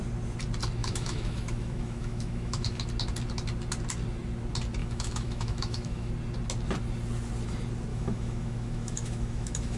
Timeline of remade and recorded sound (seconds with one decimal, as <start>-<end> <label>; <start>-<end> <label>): 0.0-0.8 recorded; 0.8-2.8 remade; 2.8-4.8 recorded; 4.8-6.1 remade; 6.1-7.9 recorded; 7.9-9.8 remade